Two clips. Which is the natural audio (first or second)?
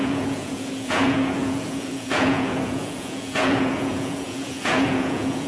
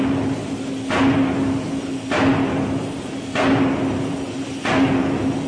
second